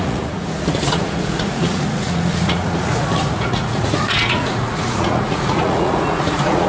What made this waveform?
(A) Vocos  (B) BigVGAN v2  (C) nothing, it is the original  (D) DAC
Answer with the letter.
A